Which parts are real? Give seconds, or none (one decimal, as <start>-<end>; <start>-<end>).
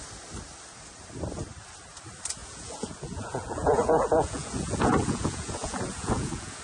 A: 0.0-2.4